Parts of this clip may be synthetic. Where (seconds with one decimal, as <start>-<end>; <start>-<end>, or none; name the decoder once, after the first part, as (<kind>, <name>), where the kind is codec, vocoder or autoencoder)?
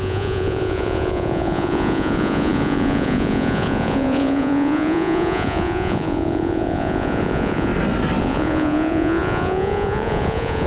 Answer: 0.0-7.7 (vocoder, Vocos); 8.2-10.7